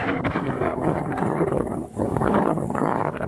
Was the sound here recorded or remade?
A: remade